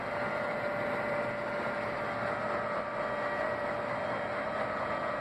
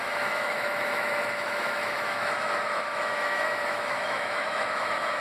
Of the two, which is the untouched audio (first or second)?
first